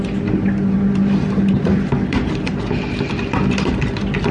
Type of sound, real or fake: fake